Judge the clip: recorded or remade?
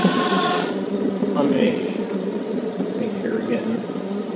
remade